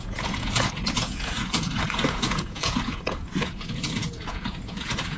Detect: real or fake fake